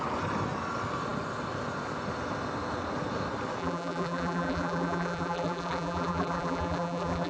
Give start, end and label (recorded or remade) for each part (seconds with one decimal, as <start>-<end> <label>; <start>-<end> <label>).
0.0-3.6 recorded; 3.6-7.3 remade